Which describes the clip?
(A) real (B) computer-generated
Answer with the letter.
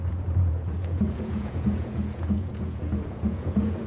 B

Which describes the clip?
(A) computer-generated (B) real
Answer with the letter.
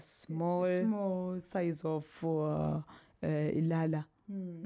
B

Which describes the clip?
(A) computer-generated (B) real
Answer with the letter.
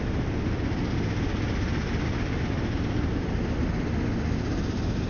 B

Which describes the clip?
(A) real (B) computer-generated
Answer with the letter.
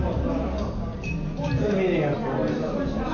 A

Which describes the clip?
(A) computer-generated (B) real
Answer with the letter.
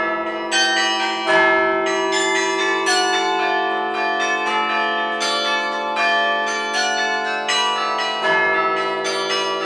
B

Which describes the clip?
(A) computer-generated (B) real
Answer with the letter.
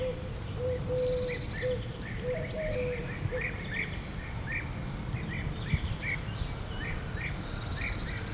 B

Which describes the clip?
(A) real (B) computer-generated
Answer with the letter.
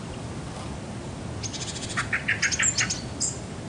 A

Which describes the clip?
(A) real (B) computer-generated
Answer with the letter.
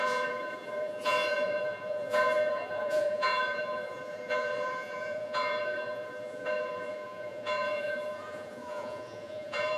B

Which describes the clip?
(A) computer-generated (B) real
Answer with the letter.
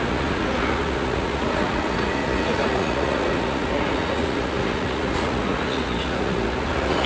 A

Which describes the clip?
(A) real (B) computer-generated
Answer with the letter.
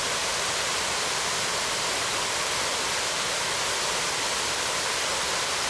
A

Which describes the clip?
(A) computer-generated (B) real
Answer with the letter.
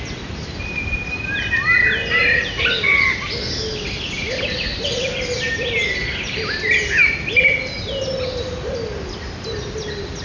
B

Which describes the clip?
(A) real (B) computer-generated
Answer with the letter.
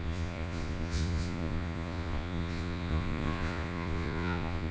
B